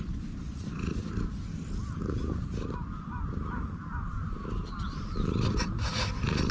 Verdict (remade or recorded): recorded